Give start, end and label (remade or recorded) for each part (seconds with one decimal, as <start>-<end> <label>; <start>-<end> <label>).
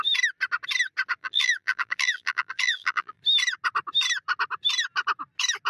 0.0-1.2 recorded; 1.2-3.2 remade; 3.2-5.7 recorded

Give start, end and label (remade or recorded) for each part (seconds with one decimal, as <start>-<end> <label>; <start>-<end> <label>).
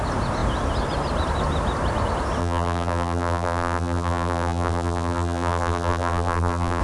0.0-2.4 recorded; 2.4-6.8 remade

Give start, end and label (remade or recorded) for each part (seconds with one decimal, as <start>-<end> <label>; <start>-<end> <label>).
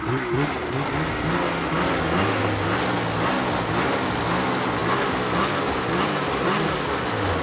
0.0-7.4 recorded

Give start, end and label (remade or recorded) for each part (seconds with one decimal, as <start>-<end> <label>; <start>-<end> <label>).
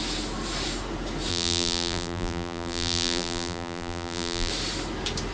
0.0-1.3 recorded; 1.3-4.5 remade; 4.5-5.3 recorded